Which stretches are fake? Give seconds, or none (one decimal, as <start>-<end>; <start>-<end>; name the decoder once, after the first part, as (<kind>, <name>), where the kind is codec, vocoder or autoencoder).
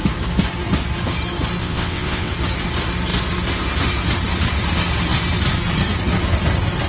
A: 1.6-2.3 (vocoder, WaveNeXt)